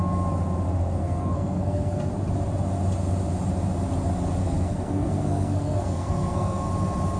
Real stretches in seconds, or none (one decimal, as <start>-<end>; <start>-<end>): 0.0-1.0; 2.1-4.4; 6.7-7.2